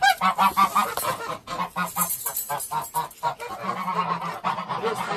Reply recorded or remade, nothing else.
recorded